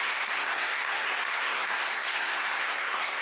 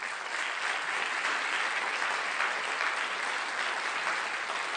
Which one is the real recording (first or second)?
second